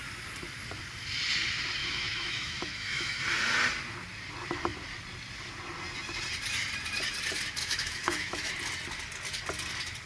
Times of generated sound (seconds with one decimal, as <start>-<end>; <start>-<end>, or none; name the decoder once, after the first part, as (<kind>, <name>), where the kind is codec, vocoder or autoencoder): 1.8-3.2 (autoencoder, DAC-VAE); 7.6-8.5